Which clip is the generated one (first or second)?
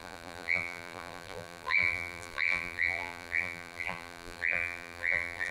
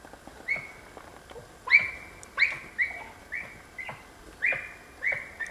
first